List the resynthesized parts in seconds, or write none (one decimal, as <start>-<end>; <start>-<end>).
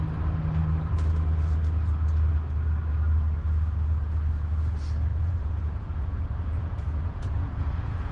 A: 5.1-8.1